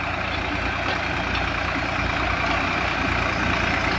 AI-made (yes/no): no